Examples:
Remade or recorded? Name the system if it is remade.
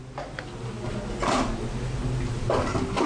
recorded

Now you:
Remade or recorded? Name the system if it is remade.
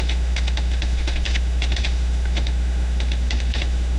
remade, autoencoder, DAC-VAE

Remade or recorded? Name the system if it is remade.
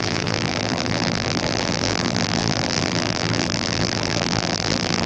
remade, vocoder, BigVGAN v2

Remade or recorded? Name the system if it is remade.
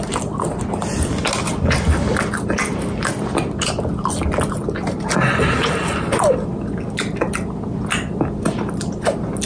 recorded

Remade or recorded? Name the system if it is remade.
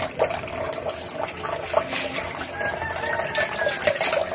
recorded